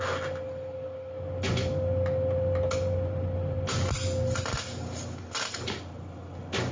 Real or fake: real